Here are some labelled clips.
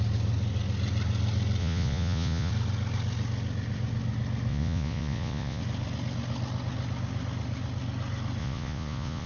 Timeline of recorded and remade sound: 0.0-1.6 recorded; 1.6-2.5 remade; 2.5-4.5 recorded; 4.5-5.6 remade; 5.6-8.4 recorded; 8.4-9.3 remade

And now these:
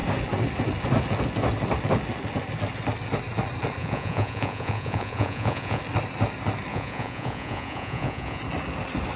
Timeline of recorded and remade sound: 0.0-3.8 recorded; 3.8-5.8 remade; 5.8-6.7 recorded; 6.7-8.4 remade; 8.4-9.2 recorded